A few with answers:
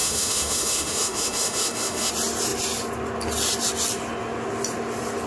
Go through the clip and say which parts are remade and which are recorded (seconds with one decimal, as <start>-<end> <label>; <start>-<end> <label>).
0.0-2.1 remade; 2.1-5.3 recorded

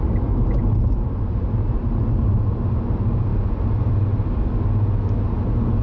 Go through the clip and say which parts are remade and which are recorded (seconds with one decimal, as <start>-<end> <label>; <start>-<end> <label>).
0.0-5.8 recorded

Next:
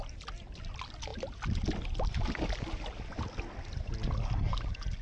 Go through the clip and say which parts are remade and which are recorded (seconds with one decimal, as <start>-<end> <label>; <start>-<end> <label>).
0.0-5.0 recorded

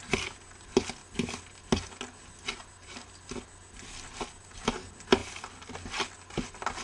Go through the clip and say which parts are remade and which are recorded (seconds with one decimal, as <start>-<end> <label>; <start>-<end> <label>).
0.0-6.8 recorded